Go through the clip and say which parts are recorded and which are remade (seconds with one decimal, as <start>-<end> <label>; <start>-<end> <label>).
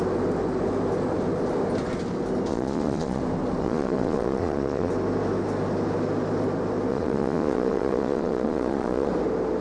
0.0-2.5 recorded; 2.5-3.2 remade; 3.2-3.6 recorded; 3.6-4.9 remade; 4.9-6.9 recorded; 6.9-9.1 remade; 9.1-9.6 recorded